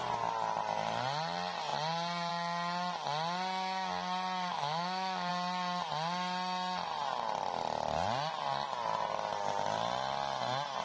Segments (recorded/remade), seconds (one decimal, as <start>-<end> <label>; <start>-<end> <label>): 0.0-4.5 recorded; 4.5-5.3 remade; 5.3-10.8 recorded

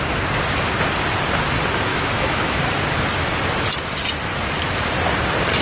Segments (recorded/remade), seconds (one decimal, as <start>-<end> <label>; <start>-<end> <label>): 0.0-1.9 recorded; 1.9-2.6 remade; 2.6-4.3 recorded; 4.3-4.9 remade; 4.9-5.6 recorded